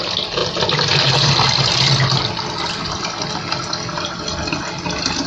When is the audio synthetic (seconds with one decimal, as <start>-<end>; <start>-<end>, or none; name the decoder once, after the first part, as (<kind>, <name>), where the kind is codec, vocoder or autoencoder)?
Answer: none